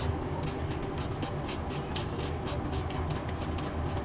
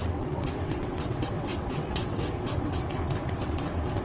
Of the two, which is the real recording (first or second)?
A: first